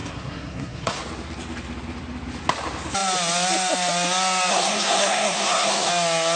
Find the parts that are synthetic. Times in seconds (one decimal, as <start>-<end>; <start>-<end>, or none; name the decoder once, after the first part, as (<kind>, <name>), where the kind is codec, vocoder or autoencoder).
0.0-1.0 (codec, SNAC); 4.5-5.9